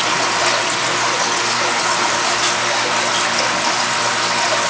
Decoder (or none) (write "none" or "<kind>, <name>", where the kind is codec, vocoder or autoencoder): none